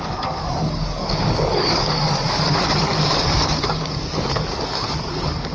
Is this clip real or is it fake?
fake